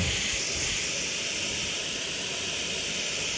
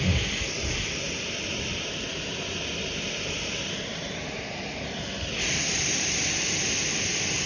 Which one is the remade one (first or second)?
first